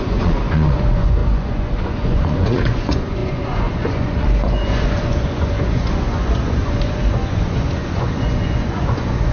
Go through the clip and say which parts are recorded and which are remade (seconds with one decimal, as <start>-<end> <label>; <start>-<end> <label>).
0.0-9.3 remade